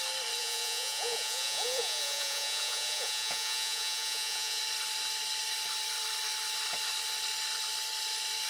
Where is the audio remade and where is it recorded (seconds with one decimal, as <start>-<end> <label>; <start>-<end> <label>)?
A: 0.0-0.4 recorded; 0.4-4.6 remade; 4.6-8.5 recorded